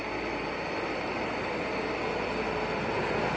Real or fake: real